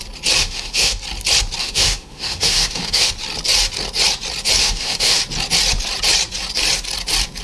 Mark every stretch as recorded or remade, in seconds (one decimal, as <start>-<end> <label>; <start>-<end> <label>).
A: 0.0-0.4 recorded; 0.4-1.0 remade; 1.0-1.6 recorded; 1.6-3.1 remade; 3.1-4.6 recorded; 4.6-5.2 remade; 5.2-7.4 recorded